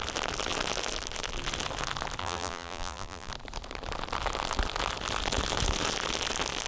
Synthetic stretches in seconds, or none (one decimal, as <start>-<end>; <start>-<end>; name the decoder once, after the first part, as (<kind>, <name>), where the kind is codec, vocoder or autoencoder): 2.2-3.3 (vocoder, BigVGAN v2)